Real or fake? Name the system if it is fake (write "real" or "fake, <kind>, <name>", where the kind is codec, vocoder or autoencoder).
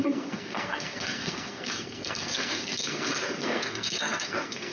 fake, codec, SNAC